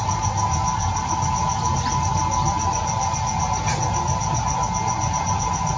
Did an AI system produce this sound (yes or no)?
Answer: no